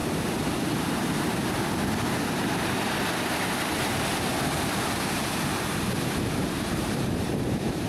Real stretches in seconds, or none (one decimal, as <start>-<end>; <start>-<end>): 0.0-0.7; 1.3-3.8; 4.3-6.4